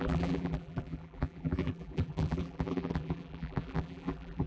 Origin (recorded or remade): remade